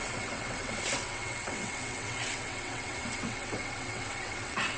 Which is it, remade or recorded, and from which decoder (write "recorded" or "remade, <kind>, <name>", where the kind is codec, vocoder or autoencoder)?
remade, vocoder, WaveNeXt